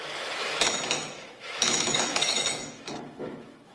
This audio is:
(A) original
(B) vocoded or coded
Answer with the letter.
B